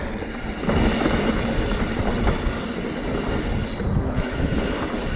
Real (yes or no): yes